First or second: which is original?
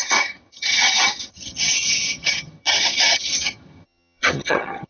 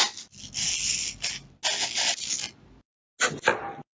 second